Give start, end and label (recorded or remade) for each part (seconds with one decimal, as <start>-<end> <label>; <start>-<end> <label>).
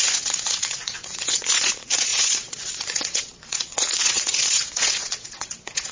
0.0-5.9 remade